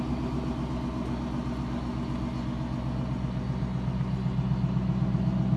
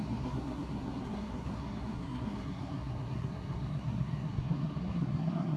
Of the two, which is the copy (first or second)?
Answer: second